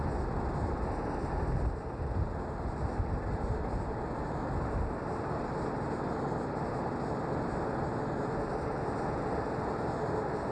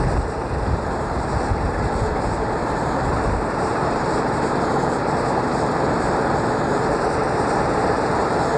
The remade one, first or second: second